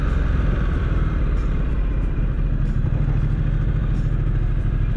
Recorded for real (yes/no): no